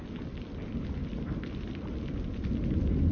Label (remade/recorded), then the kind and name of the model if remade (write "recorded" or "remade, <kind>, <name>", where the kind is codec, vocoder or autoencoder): recorded